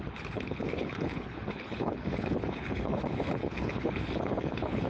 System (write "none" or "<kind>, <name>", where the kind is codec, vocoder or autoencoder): codec, HILCodec